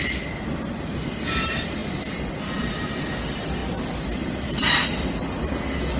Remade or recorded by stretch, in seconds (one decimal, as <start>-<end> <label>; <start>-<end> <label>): 0.0-6.0 recorded